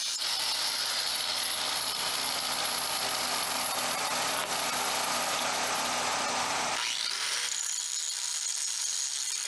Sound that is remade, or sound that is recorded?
recorded